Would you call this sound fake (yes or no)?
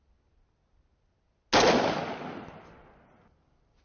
no